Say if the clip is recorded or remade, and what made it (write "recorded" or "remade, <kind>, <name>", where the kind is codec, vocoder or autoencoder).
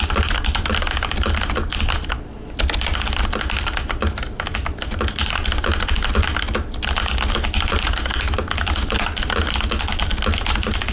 recorded